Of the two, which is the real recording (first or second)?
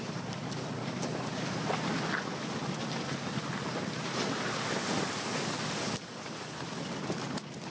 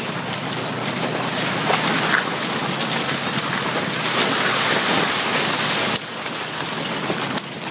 second